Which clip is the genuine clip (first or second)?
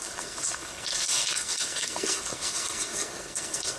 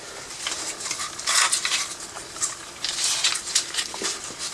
second